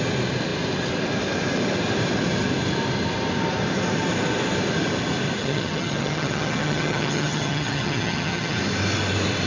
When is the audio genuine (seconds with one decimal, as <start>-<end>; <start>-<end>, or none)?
0.0-5.4; 8.6-9.5